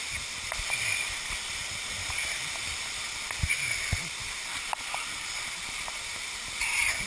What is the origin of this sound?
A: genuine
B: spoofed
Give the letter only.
A